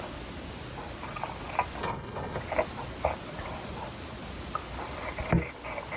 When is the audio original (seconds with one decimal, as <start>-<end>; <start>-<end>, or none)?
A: 0.0-1.8; 2.4-6.0